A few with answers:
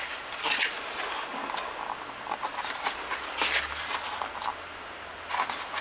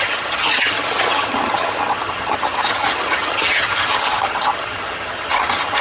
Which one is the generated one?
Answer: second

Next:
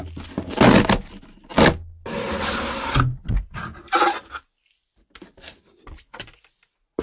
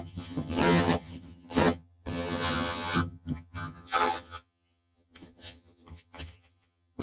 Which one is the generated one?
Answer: second